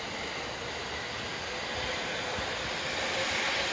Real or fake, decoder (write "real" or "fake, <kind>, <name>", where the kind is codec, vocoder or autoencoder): real